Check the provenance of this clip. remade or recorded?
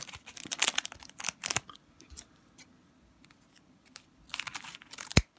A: recorded